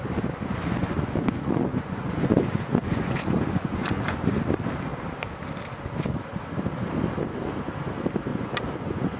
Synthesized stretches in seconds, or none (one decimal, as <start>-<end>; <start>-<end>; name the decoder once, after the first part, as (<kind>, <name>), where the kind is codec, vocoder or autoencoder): 0.8-4.4 (vocoder, Vocos); 8.3-9.2